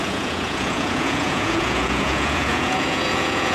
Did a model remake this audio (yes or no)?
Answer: yes